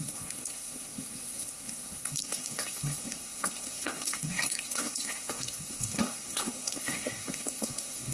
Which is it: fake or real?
fake